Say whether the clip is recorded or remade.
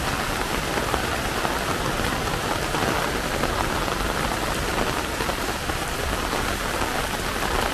recorded